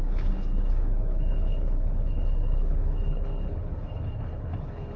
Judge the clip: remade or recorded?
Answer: remade